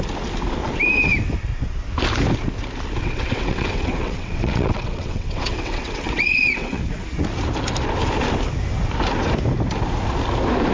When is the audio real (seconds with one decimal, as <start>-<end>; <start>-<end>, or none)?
0.0-3.0; 6.8-10.7